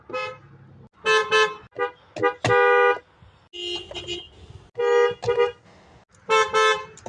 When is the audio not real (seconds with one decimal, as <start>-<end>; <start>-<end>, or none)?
none